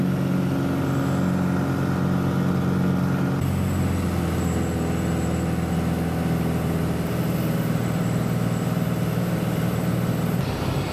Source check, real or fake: real